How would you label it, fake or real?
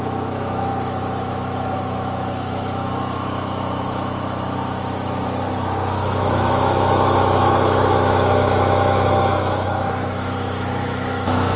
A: fake